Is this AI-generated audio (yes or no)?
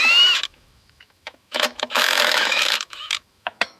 yes